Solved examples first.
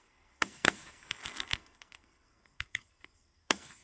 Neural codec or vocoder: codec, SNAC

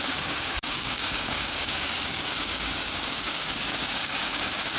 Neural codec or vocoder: codec, DAC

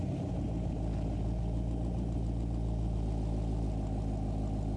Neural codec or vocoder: none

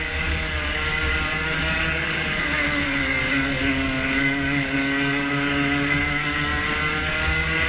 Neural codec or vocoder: codec, DAC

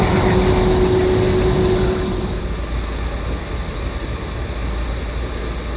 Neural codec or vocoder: none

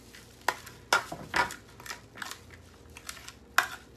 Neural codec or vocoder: none